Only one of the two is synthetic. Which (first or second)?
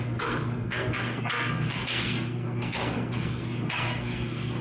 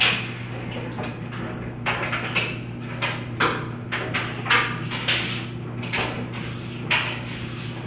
first